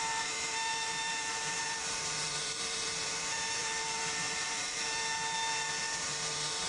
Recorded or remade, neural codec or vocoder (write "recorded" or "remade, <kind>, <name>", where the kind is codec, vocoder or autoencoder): remade, vocoder, BigVGAN v2